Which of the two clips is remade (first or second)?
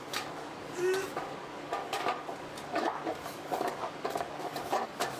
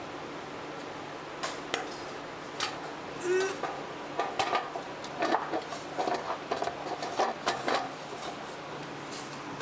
first